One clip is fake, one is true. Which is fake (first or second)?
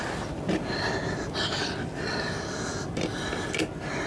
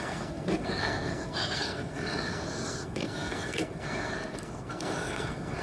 second